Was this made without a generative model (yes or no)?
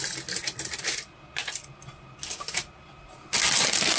yes